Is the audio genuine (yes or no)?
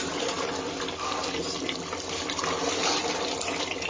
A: yes